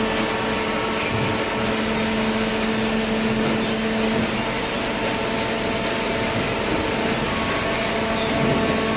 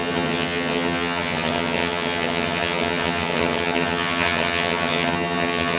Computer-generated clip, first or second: second